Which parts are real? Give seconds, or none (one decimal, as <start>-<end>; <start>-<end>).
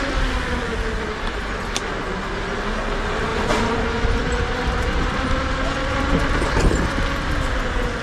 0.0-3.3; 7.0-8.0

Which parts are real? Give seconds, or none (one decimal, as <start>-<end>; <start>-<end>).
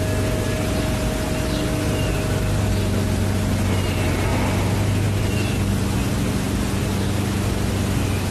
0.0-4.3; 5.2-6.8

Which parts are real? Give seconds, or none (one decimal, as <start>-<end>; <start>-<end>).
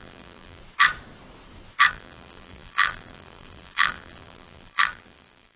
0.6-1.9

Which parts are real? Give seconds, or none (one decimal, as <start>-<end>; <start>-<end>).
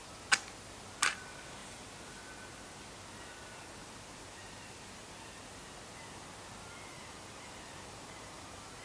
0.0-3.8; 5.2-6.9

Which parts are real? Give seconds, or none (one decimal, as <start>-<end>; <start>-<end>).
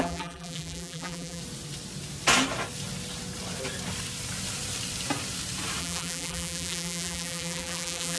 1.4-5.8